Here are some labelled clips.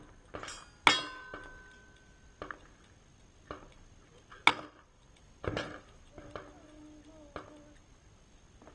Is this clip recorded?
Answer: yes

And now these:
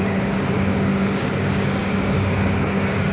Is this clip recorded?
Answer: no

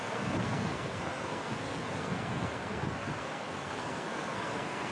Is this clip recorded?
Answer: no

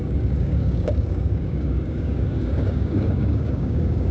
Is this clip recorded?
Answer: no